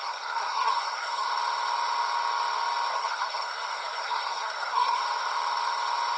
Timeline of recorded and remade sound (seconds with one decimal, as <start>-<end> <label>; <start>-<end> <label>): 0.0-1.3 remade; 1.3-2.9 recorded; 2.9-5.0 remade; 5.0-6.2 recorded